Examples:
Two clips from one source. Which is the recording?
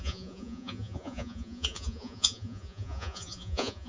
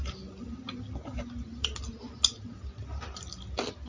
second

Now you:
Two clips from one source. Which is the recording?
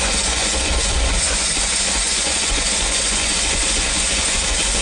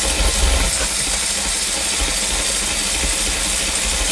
second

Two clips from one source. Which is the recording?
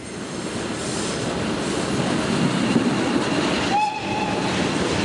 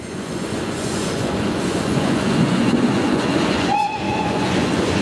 first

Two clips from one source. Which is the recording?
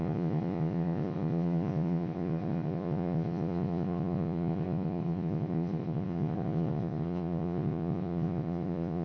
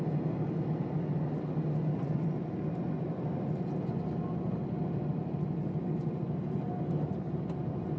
second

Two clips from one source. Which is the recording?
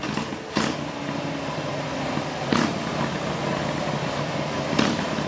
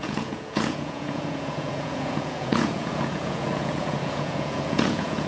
first